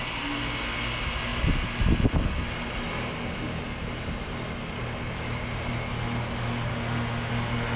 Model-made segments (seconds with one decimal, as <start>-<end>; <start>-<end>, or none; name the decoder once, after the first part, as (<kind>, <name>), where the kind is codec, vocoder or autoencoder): 6.7-7.3 (autoencoder, DAC-VAE)